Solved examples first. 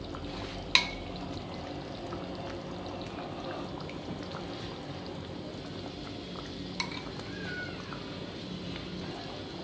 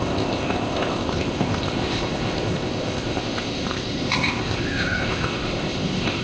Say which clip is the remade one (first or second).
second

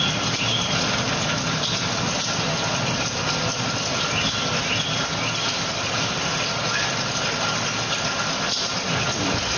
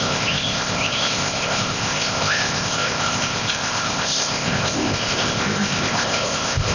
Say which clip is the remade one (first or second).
second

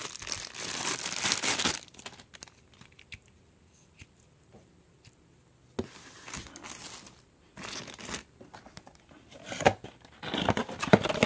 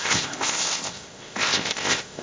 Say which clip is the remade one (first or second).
second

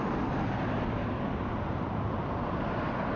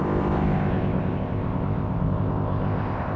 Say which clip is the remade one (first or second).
second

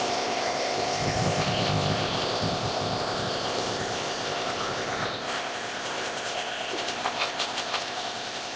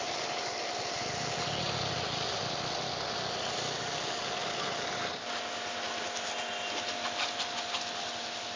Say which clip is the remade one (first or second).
first